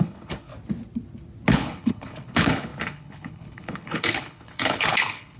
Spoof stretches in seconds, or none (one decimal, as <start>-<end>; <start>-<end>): 0.0-0.5; 1.5-5.4